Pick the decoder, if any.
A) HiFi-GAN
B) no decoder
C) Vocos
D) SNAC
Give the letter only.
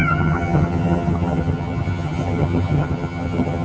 A